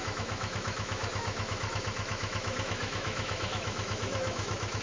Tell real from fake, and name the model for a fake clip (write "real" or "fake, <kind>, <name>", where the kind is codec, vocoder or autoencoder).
fake, autoencoder, DAC-VAE